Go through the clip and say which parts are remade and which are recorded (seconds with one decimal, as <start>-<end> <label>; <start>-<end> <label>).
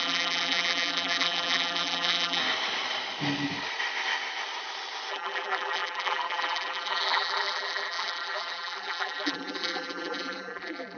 0.0-2.4 remade; 2.4-5.1 recorded; 5.1-11.0 remade